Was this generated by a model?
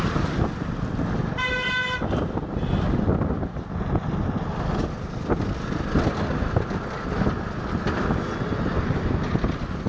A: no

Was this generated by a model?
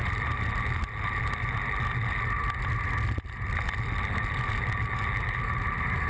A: no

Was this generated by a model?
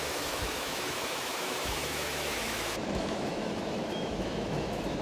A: yes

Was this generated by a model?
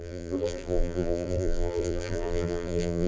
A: yes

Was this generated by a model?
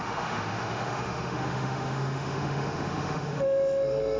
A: yes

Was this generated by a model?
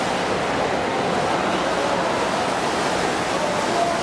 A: no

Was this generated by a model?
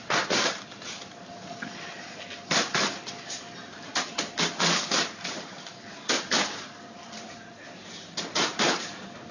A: no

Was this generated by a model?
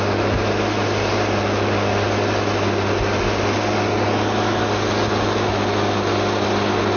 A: no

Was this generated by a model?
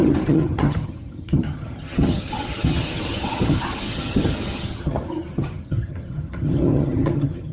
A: yes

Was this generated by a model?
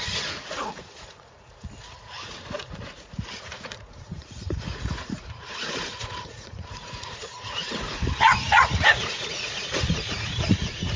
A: yes